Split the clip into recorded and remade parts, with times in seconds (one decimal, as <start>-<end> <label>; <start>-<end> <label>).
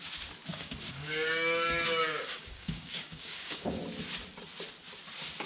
0.0-0.5 recorded; 0.5-3.8 remade; 3.8-5.5 recorded